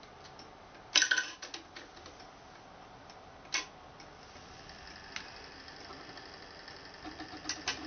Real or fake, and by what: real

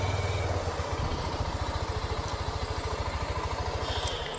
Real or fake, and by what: real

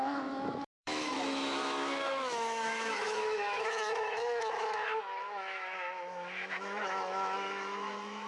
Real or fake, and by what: fake, autoencoder, DAC-VAE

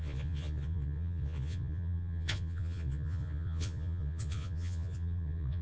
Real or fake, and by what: fake, vocoder, Vocos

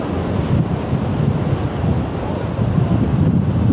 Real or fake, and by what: real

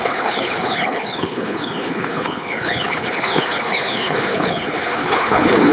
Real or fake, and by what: fake, codec, HILCodec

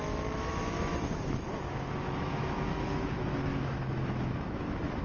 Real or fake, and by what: fake, autoencoder, DAC-VAE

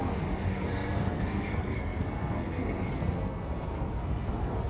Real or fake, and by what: fake, codec, SNAC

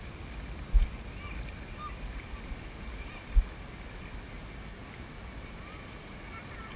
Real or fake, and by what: real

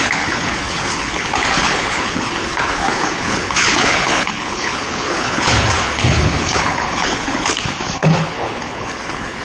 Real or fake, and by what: fake, codec, HILCodec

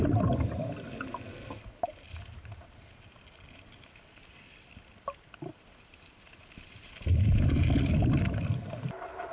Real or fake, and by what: real